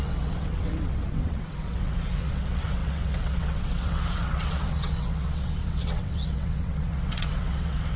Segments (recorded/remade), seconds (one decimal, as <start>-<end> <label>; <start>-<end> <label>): 0.0-8.0 remade